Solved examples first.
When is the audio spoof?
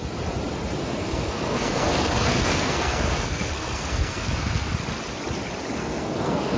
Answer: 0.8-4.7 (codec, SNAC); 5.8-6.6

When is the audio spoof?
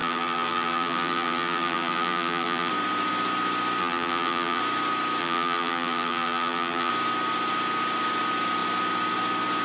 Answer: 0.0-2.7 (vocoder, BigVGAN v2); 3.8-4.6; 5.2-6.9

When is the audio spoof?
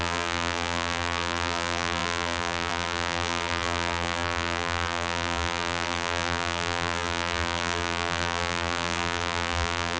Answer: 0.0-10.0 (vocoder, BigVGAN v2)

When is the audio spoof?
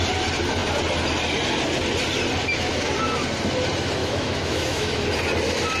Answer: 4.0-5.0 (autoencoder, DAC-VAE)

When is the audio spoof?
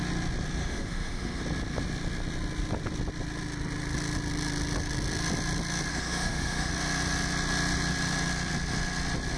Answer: 0.6-1.4 (autoencoder, DAC-VAE); 5.9-6.7